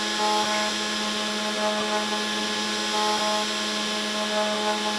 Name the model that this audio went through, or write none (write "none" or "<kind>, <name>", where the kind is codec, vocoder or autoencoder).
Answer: none